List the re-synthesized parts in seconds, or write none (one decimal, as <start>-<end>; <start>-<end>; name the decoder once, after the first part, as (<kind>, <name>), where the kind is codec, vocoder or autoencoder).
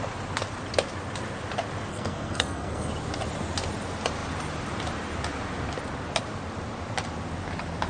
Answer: 1.9-2.9 (codec, SNAC)